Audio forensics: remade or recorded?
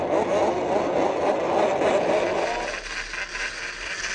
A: recorded